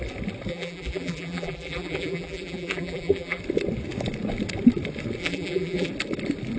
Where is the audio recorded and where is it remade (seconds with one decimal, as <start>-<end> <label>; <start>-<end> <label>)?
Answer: 0.0-0.5 recorded; 0.5-3.4 remade; 3.4-5.2 recorded; 5.2-5.9 remade; 5.9-6.6 recorded